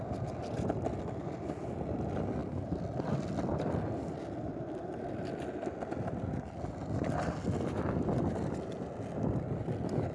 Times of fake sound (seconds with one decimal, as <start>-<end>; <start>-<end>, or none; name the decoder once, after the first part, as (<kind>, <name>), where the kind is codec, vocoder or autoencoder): none